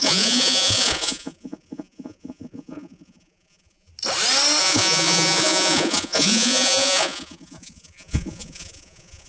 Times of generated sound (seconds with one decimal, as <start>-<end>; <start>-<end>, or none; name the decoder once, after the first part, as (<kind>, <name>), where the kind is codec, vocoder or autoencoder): 0.0-3.9 (vocoder, Vocos); 4.6-9.3